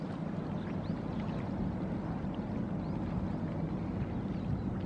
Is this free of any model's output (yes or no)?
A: yes